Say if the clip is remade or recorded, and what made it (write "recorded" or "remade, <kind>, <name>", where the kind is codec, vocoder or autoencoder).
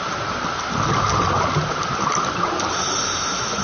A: recorded